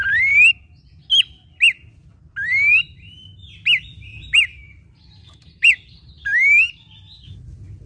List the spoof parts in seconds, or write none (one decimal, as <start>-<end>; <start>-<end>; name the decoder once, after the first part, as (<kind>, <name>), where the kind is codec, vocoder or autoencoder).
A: 4.1-6.1 (vocoder, BigVGAN v2)